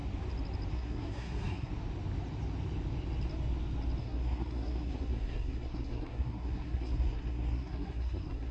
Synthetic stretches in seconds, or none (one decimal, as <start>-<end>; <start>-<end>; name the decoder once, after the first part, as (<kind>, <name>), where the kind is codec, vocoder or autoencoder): 0.7-1.7 (codec, SNAC); 4.0-8.5